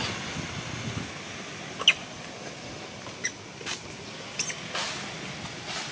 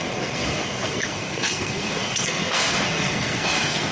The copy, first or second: second